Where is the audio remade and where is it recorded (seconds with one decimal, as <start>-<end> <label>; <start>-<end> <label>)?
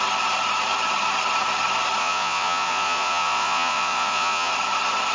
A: 0.0-2.0 recorded; 2.0-4.5 remade; 4.5-5.1 recorded